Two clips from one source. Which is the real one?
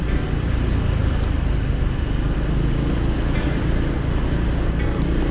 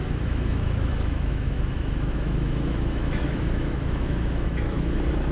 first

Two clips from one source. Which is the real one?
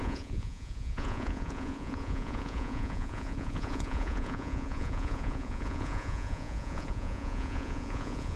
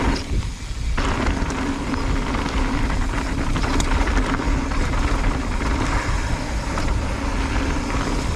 second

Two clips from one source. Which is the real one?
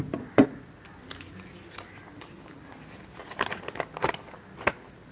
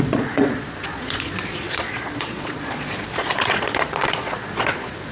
first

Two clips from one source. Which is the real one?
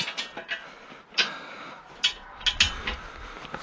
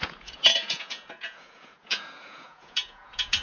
first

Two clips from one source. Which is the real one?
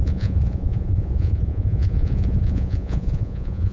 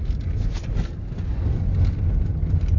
second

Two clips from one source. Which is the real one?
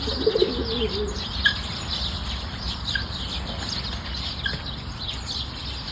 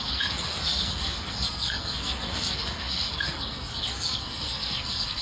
first